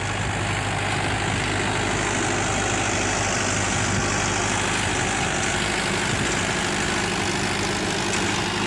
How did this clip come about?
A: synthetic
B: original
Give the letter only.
B